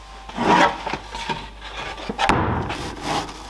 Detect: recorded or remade recorded